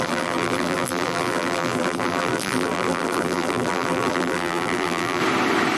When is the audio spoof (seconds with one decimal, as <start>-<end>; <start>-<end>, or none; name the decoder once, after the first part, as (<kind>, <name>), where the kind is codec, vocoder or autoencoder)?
0.0-5.2 (vocoder, BigVGAN v2)

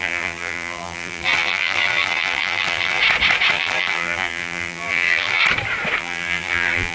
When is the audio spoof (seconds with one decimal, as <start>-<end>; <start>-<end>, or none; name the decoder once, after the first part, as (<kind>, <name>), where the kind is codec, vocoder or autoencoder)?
0.0-3.0 (vocoder, BigVGAN v2); 3.5-5.4; 6.0-6.9

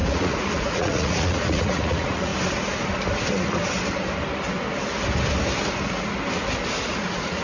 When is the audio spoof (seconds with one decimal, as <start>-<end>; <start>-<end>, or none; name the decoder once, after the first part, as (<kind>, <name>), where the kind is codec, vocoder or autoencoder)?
0.0-2.3 (vocoder, Vocos); 6.7-7.4